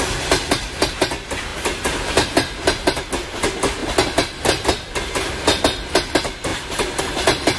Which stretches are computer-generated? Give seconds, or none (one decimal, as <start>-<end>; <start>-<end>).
none